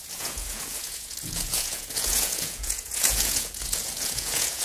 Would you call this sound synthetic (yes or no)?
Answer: yes